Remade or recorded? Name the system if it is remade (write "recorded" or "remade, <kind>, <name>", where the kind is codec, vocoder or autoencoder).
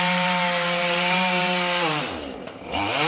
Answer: remade, vocoder, BigVGAN v2